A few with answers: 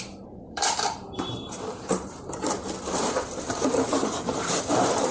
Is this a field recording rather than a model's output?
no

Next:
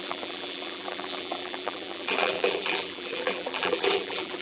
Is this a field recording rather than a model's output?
no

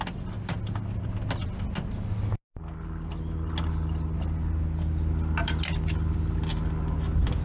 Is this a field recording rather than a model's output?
yes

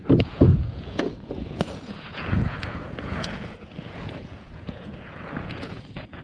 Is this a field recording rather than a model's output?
no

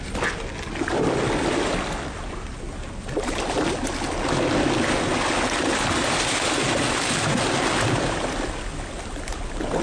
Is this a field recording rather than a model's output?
yes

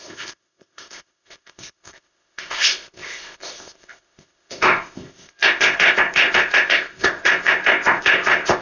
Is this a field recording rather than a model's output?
no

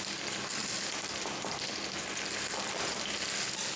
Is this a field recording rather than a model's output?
no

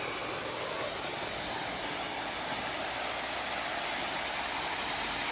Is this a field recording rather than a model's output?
yes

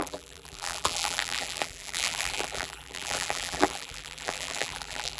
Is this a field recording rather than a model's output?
no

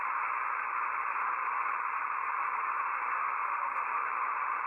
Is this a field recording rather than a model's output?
yes